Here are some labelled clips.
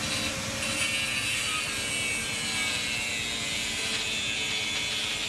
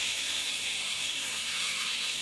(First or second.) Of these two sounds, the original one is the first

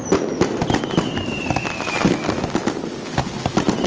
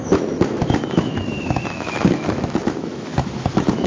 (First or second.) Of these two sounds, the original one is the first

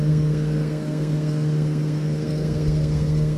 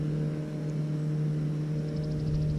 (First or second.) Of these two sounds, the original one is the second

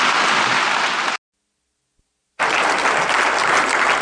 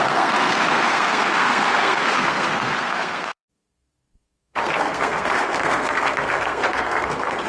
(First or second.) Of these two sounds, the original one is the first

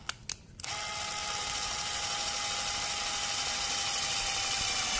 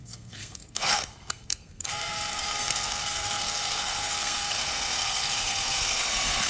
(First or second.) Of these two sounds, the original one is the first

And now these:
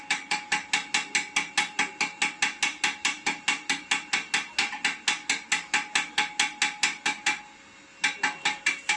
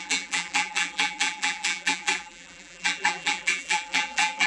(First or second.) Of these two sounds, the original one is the first